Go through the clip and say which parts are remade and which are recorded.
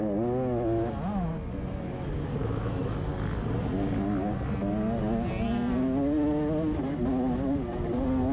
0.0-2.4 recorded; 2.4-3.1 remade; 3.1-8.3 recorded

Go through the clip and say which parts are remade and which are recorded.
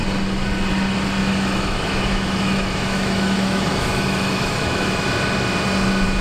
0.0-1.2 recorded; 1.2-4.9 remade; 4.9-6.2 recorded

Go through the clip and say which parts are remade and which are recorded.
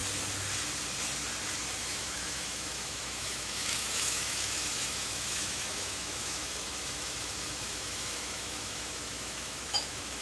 0.0-1.8 recorded; 1.8-10.2 remade